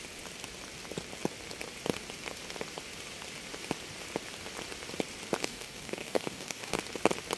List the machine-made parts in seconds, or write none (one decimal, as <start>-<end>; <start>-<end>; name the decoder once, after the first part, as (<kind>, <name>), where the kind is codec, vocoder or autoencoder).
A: 5.4-6.8 (codec, DAC)